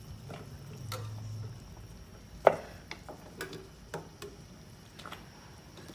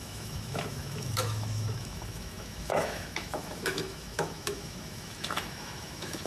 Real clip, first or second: first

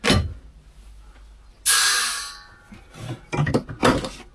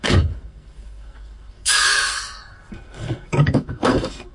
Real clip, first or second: first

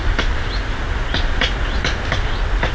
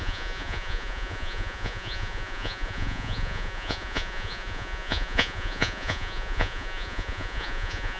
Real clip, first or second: first